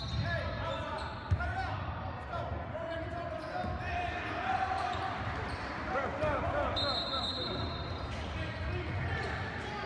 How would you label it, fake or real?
real